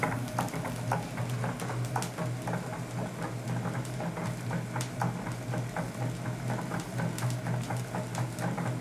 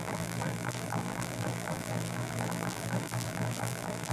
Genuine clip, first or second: first